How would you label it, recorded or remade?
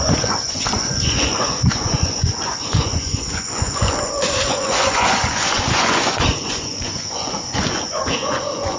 remade